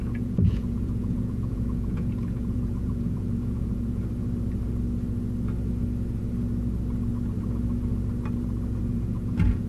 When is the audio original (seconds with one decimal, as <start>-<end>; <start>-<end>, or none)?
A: 4.0-8.8